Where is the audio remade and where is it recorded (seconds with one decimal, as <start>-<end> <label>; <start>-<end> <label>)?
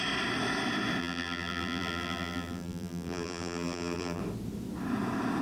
0.0-1.0 recorded; 1.0-4.2 remade; 4.2-5.4 recorded